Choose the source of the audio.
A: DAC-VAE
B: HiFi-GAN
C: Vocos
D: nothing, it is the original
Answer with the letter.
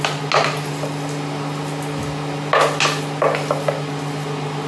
D